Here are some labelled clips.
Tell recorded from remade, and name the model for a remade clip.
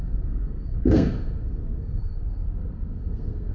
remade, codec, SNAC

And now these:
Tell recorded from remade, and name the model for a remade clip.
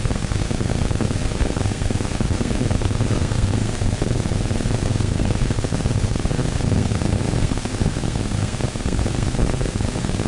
remade, codec, SNAC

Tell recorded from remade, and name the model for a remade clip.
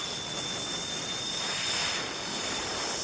recorded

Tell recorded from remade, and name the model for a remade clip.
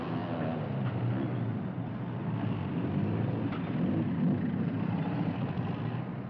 recorded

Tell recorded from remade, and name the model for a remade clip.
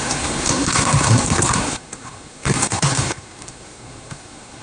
remade, codec, SNAC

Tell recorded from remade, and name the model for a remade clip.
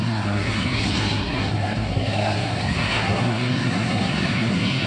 remade, codec, SNAC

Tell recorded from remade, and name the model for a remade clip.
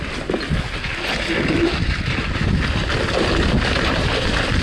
recorded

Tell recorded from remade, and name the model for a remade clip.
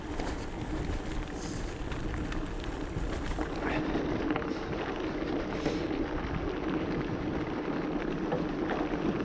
recorded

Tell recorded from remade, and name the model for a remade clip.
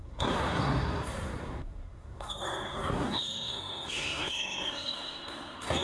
remade, codec, SNAC